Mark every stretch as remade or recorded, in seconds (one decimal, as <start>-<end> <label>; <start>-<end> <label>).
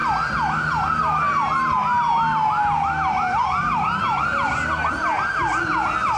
0.0-6.2 recorded